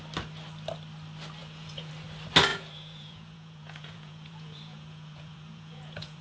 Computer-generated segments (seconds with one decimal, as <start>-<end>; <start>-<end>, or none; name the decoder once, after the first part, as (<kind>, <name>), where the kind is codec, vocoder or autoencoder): 1.4-1.9 (vocoder, Vocos); 2.5-6.2